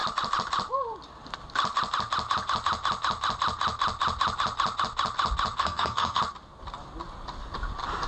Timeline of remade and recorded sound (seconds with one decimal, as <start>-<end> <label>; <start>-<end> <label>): 0.0-5.6 recorded; 5.6-6.2 remade; 6.2-8.1 recorded